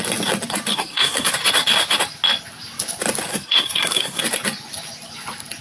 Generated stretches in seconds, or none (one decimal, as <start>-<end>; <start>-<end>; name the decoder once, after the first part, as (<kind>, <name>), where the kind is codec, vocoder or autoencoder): 0.7-1.3 (codec, SNAC); 3.3-4.2

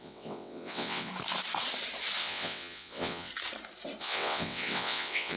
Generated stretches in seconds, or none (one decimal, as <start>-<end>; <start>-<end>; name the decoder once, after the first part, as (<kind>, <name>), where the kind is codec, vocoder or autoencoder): 0.0-1.1 (vocoder, WaveNeXt); 2.2-3.3; 4.0-5.4

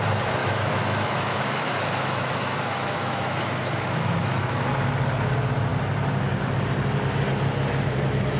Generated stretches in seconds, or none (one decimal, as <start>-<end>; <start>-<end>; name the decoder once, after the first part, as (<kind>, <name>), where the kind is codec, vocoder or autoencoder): 0.4-4.7 (autoencoder, DAC-VAE)

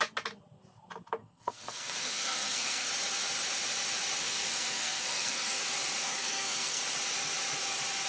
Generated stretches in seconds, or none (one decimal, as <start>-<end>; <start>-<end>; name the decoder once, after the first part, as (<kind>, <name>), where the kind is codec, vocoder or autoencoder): 1.2-2.9 (codec, SNAC); 4.2-5.6; 6.0-6.8